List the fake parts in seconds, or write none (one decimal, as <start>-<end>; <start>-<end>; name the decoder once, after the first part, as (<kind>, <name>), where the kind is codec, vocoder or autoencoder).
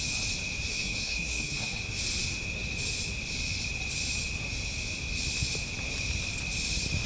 0.7-1.8 (codec, SNAC)